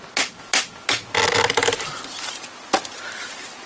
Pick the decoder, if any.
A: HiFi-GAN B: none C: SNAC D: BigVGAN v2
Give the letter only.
B